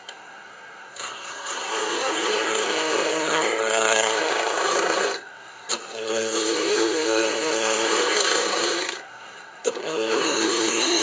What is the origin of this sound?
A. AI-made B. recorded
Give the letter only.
A